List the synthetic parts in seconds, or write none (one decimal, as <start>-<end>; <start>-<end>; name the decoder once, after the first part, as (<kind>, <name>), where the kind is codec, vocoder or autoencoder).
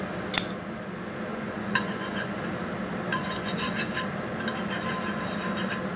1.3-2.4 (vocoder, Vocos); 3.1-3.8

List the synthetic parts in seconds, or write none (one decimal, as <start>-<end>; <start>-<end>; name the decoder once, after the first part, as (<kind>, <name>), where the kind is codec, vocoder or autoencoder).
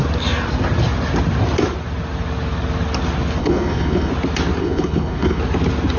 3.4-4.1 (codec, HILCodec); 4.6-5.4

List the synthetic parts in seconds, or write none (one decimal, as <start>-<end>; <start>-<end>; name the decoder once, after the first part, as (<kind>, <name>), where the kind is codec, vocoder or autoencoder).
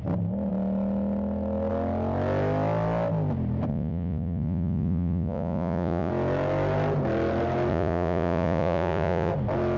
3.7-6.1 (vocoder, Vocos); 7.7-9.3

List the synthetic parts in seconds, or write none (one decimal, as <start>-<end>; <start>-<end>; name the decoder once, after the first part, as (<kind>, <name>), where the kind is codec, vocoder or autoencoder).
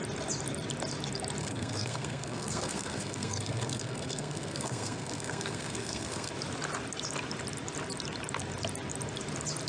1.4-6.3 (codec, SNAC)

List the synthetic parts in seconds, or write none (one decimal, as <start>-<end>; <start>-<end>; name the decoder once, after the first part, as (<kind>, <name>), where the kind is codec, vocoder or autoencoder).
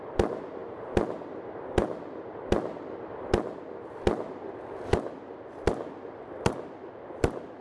none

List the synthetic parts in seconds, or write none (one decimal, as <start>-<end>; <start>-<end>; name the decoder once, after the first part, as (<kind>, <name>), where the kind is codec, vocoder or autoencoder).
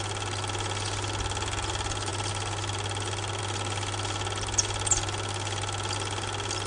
none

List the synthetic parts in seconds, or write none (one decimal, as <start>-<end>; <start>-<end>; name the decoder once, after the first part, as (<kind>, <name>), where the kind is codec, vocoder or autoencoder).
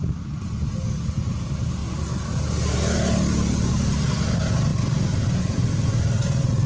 none